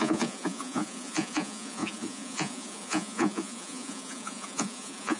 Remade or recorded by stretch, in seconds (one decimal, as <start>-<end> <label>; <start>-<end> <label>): 0.0-5.2 remade